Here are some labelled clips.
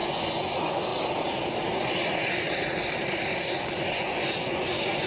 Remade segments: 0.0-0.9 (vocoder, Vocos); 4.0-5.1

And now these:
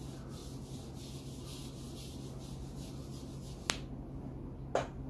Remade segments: none

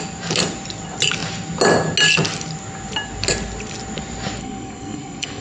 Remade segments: 4.4-5.4 (codec, SNAC)

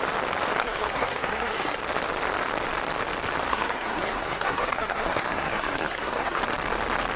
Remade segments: 0.6-1.8 (codec, SNAC); 3.5-6.4

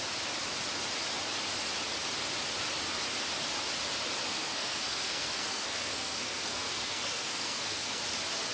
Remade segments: 4.2-8.0 (codec, SNAC)

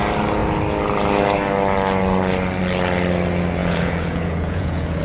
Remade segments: 3.6-5.0 (vocoder, Vocos)

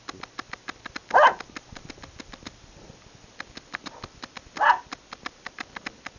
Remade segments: 0.0-1.0 (vocoder, BigVGAN v2); 4.7-6.2

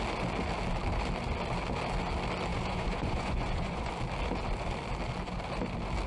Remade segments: 2.5-3.9 (vocoder, Vocos)